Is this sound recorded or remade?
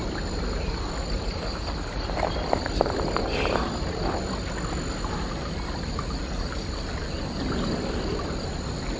recorded